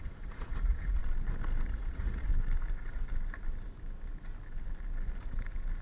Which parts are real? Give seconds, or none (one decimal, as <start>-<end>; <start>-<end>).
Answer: 1.0-1.7; 2.3-5.8